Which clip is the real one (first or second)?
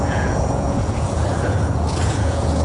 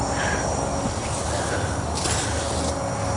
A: second